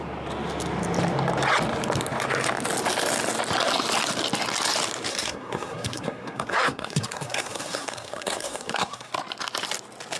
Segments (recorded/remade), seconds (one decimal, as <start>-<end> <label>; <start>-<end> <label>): 0.0-5.1 recorded; 5.1-9.1 remade; 9.1-10.2 recorded